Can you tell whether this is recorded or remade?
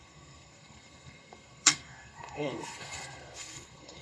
remade